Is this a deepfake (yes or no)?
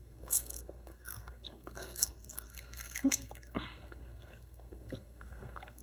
yes